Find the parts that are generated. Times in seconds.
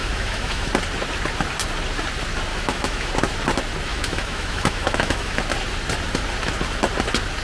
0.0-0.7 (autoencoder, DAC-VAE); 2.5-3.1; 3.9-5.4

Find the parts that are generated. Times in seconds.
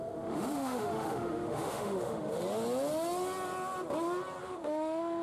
0.0-2.4 (autoencoder, DAC-VAE); 4.4-5.2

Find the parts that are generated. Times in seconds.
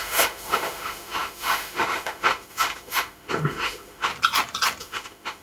0.0-4.1 (autoencoder, DAC-VAE); 4.8-5.4